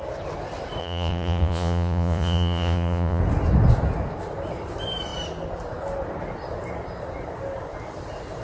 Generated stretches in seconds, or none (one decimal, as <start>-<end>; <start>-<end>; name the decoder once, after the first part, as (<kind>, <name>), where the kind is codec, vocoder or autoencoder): 0.8-3.2 (vocoder, Vocos)